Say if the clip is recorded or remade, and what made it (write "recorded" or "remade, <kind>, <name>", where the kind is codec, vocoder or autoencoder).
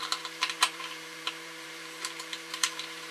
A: remade, vocoder, BigVGAN v2